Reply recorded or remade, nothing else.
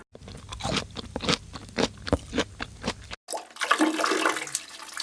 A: recorded